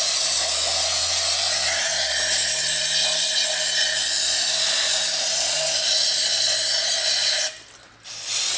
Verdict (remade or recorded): recorded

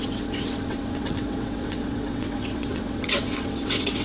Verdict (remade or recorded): remade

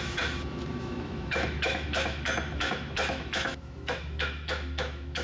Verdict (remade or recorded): remade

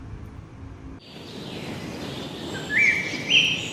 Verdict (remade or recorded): recorded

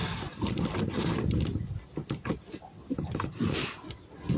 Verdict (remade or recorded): recorded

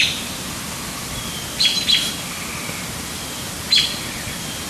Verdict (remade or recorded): recorded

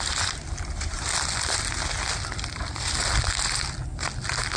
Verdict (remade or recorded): recorded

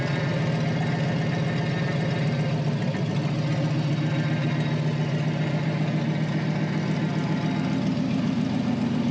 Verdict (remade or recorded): recorded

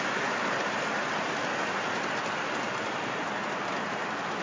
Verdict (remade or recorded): recorded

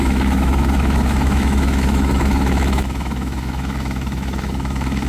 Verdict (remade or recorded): remade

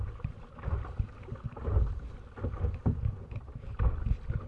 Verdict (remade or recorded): recorded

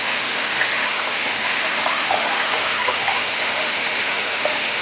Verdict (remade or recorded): remade